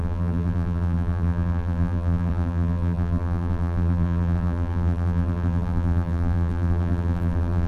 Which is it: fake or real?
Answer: fake